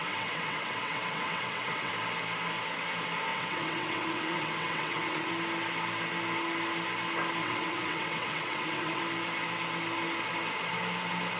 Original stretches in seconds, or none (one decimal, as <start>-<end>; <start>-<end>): 1.9-3.3; 5.3-7.4; 9.0-11.4